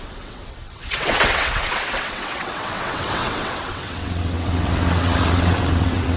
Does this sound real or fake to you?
fake